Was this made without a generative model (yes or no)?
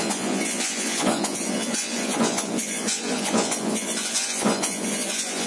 no